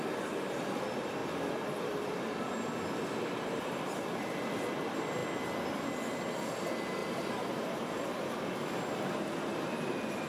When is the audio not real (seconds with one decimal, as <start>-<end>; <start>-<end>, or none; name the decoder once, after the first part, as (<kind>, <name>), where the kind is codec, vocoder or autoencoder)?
7.0-8.8 (vocoder, BigVGAN v2)